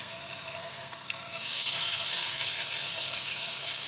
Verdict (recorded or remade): remade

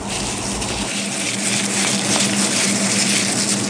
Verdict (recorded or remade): recorded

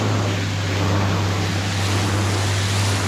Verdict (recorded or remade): recorded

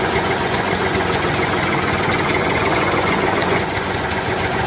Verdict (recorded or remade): remade